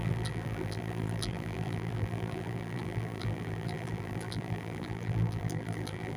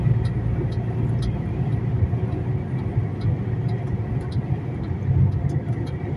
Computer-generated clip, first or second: first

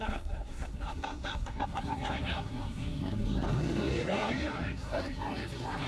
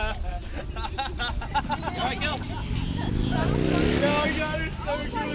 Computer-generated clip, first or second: first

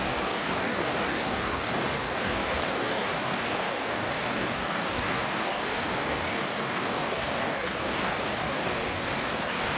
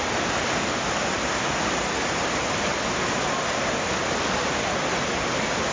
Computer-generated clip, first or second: first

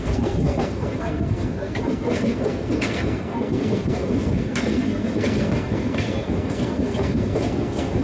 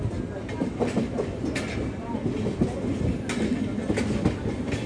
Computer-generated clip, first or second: first